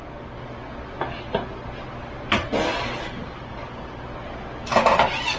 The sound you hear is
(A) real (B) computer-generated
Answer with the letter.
A